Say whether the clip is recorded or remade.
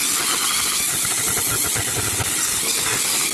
recorded